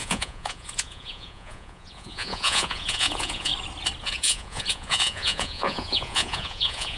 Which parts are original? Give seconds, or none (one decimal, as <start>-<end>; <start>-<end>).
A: 3.5-4.0